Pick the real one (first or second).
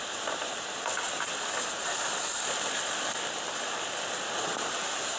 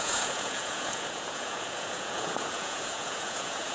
first